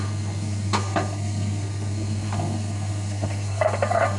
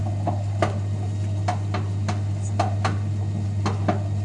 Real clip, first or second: second